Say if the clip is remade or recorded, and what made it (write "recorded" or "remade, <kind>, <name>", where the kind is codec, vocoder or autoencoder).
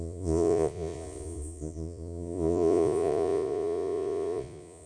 remade, vocoder, Vocos